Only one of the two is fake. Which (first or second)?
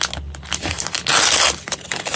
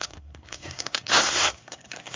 second